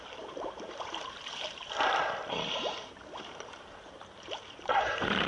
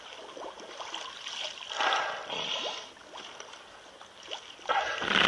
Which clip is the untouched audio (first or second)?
second